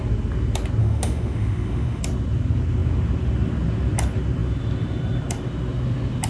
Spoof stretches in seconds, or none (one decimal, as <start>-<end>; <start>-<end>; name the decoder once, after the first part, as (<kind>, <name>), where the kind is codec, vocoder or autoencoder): 0.8-2.0 (autoencoder, DAC-VAE)